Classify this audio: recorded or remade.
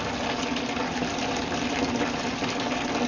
recorded